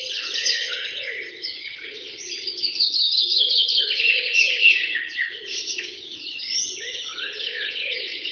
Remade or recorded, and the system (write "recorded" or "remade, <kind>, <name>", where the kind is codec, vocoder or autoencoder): remade, codec, HILCodec